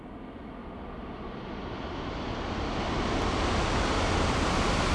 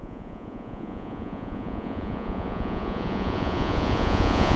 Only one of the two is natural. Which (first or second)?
first